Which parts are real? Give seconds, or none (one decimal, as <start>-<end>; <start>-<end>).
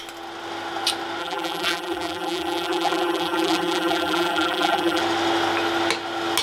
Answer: 0.0-1.2; 5.0-6.4